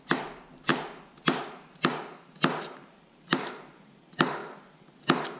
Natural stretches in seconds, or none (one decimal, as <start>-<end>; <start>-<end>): 0.7-1.4; 1.9-2.9; 4.4-5.4